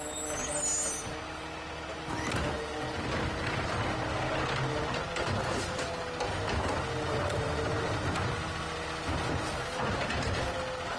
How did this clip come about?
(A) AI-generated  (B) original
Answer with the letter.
B